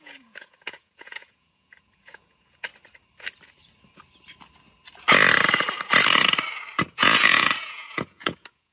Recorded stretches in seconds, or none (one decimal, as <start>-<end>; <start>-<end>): 2.7-6.9